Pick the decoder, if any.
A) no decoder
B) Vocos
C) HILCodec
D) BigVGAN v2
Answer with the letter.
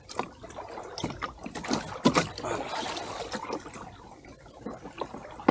A